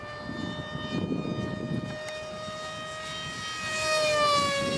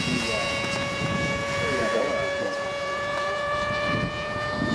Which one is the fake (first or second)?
second